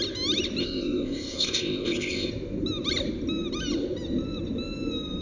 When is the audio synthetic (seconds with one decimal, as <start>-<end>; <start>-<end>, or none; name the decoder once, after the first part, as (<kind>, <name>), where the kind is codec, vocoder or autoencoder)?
0.6-2.3 (codec, ZipCodec)